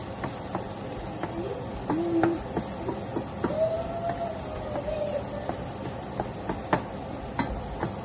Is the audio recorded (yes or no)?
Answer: yes